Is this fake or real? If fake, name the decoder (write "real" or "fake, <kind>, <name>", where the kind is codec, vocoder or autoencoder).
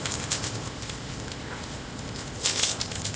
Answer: fake, codec, ZipCodec